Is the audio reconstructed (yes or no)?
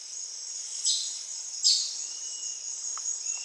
no